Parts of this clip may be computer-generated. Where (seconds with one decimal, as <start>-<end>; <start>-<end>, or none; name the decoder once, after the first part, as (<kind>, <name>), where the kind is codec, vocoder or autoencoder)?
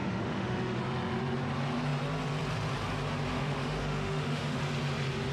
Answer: 0.0-0.8 (autoencoder, DAC-VAE); 3.3-4.6